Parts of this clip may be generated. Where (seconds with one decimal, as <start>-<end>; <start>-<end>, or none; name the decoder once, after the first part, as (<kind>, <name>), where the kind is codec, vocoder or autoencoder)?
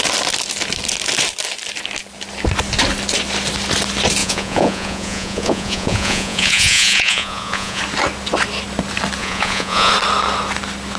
4.2-7.8 (vocoder, Vocos); 9.2-9.9